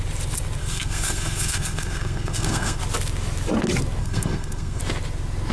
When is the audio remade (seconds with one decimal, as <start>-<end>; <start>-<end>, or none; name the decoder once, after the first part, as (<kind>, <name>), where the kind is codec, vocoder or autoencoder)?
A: 0.6-2.8 (codec, SNAC); 4.0-4.8